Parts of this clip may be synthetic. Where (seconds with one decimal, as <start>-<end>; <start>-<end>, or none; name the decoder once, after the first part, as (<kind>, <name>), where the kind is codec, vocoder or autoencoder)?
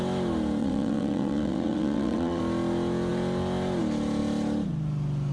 0.6-2.4 (vocoder, WaveNeXt)